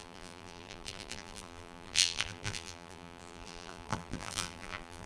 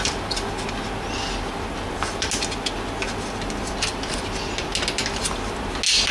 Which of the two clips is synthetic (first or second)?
first